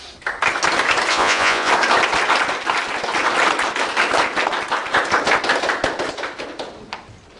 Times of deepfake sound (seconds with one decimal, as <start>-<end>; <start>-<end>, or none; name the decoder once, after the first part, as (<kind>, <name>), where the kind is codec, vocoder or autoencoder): 1.1-1.7 (vocoder, Vocos)